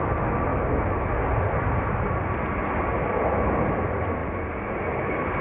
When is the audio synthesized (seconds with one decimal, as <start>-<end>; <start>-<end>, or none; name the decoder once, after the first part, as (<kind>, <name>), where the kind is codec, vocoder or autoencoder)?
none